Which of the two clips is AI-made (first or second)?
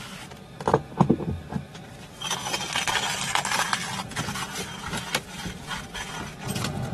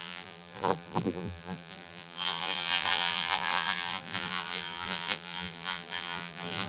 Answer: second